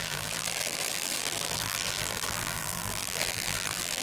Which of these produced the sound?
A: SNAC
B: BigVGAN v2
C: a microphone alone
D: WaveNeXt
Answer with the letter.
B